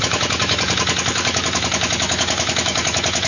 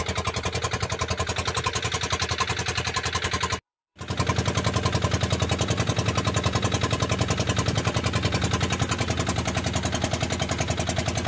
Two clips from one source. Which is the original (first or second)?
second